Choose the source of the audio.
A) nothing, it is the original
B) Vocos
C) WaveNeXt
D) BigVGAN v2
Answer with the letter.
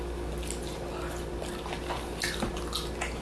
A